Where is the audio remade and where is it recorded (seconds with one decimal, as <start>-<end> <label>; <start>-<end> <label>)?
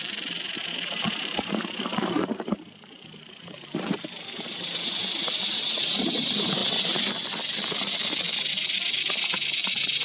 0.0-6.6 remade; 6.6-8.3 recorded; 8.3-10.0 remade